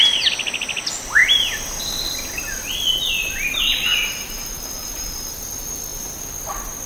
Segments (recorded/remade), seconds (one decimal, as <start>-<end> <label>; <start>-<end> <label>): 0.0-6.9 recorded